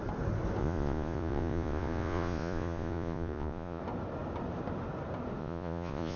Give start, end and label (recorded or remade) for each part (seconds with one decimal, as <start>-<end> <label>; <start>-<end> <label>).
0.0-0.6 recorded; 0.6-3.8 remade; 3.8-5.4 recorded; 5.4-6.2 remade